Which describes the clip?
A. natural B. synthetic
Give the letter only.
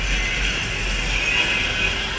A